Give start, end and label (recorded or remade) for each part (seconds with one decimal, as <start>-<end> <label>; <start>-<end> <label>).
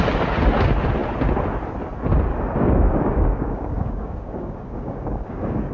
0.0-2.3 recorded; 2.3-5.7 remade